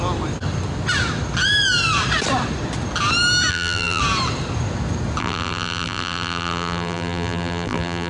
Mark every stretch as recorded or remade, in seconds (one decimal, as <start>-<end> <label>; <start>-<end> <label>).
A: 0.0-3.5 recorded; 3.5-4.0 remade; 4.0-5.2 recorded; 5.2-8.1 remade